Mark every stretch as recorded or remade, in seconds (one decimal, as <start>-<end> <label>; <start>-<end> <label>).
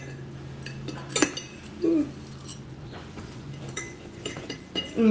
0.0-2.5 recorded; 2.5-4.6 remade; 4.6-5.1 recorded